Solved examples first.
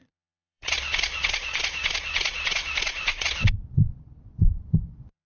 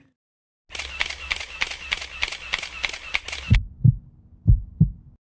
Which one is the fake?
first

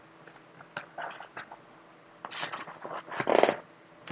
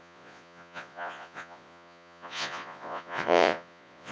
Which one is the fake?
second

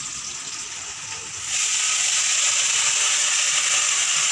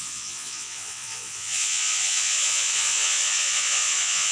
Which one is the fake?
second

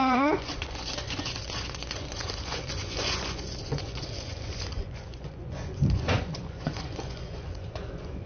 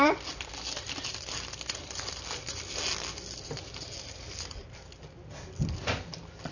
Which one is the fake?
first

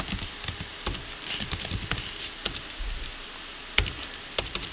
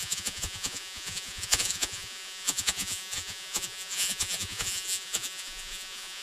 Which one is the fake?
second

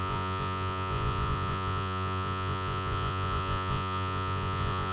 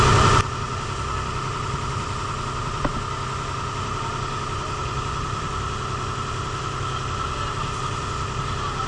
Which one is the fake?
first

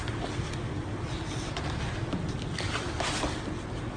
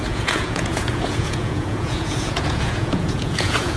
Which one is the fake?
second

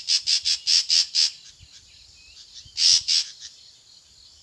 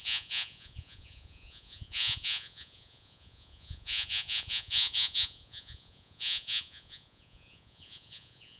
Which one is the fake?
second